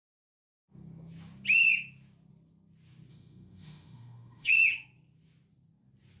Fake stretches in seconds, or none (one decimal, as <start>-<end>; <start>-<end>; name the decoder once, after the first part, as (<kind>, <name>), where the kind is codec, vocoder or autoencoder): 3.1-4.5 (autoencoder, DAC-VAE)

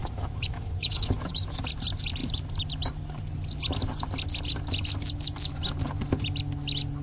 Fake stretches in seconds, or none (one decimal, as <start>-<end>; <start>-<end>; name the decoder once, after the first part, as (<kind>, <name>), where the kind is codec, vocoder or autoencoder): 0.0-1.6 (autoencoder, DAC-VAE)

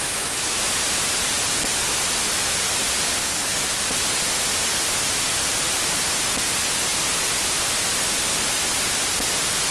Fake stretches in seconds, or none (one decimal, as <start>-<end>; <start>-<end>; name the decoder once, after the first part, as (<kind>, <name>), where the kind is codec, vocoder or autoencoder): 0.0-0.6 (autoencoder, DAC-VAE); 3.2-3.9